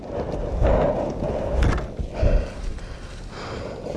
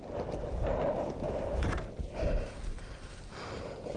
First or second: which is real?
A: first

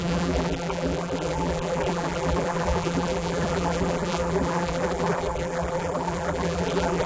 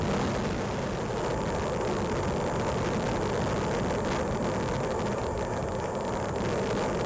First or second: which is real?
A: second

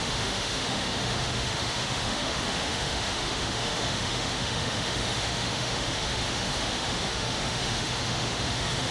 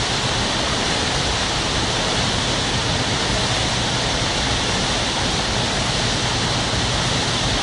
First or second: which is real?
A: second